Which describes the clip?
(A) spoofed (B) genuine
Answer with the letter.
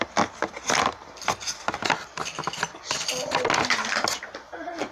B